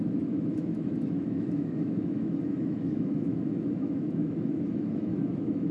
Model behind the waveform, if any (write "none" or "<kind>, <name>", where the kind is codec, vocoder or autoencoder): autoencoder, DAC-VAE